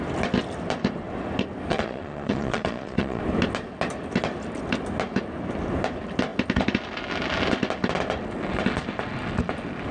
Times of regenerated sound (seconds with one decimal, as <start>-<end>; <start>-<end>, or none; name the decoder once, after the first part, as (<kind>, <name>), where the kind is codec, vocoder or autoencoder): 1.7-3.2 (vocoder, Vocos)